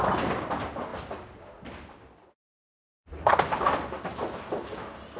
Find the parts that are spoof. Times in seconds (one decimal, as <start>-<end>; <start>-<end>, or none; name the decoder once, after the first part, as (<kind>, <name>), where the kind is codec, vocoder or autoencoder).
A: 2.7-3.3 (vocoder, Vocos)